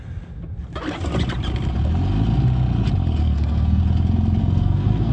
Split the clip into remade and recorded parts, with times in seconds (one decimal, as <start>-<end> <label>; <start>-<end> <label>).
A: 0.0-3.2 recorded; 3.2-3.8 remade; 3.8-4.4 recorded; 4.4-5.1 remade